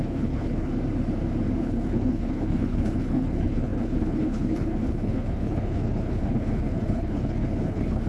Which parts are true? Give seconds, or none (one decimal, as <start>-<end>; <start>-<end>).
0.7-1.6